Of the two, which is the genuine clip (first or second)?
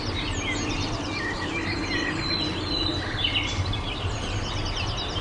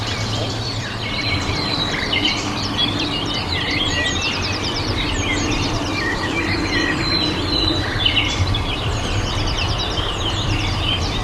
first